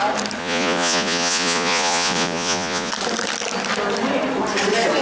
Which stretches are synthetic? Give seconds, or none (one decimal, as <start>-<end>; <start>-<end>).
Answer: 0.4-2.9